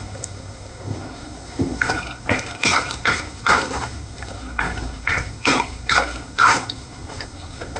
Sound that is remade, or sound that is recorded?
remade